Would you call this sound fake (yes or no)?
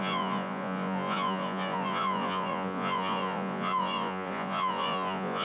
yes